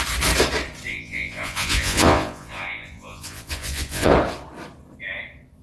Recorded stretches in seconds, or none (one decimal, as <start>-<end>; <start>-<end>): 0.0-0.9; 4.1-5.6